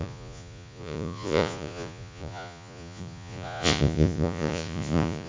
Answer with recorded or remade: remade